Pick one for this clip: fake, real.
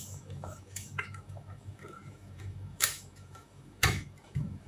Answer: fake